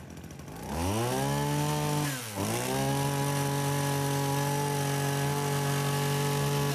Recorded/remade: recorded